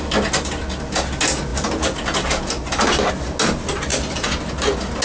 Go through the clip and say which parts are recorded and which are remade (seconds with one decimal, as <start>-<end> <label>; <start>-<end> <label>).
0.0-5.0 recorded